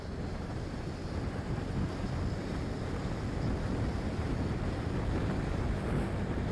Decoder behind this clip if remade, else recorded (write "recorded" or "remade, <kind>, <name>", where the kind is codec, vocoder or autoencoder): recorded